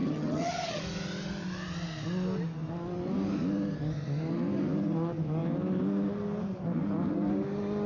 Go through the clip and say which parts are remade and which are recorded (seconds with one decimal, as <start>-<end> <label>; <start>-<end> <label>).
0.0-0.8 remade; 0.8-7.9 recorded